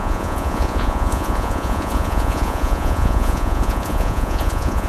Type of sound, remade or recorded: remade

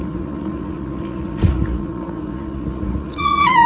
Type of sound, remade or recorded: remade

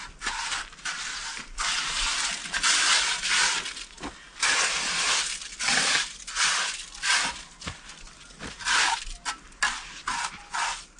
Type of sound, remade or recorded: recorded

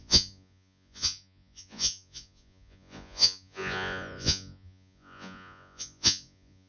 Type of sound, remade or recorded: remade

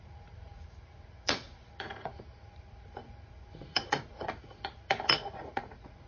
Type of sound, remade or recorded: remade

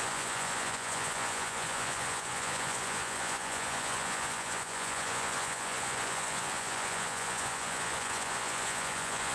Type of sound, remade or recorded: remade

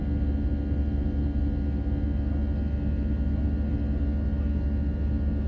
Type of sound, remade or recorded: recorded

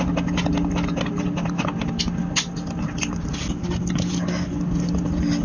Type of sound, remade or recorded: recorded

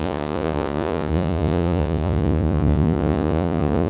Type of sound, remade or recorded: remade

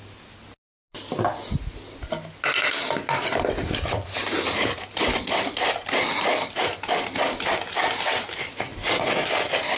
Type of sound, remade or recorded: recorded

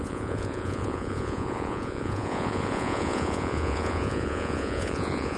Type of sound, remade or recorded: remade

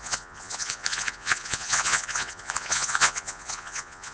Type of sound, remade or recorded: remade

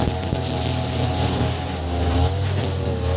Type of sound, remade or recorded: recorded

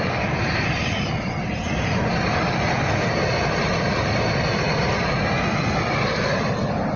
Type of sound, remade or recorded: recorded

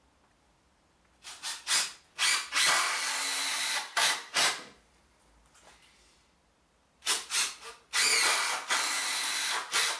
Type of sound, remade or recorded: recorded